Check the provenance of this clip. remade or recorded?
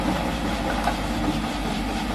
remade